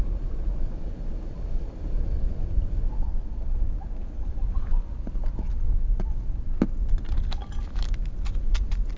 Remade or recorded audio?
recorded